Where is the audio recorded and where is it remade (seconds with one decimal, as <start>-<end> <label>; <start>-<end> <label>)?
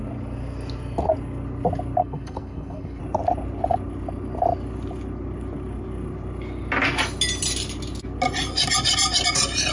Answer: 0.0-2.0 recorded; 2.0-3.0 remade; 3.0-9.7 recorded